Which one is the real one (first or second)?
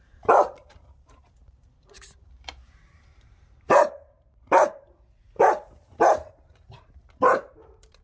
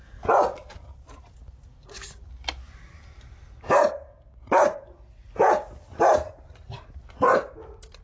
second